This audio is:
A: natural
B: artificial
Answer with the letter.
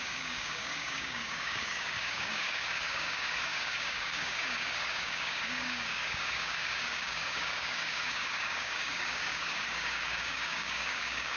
B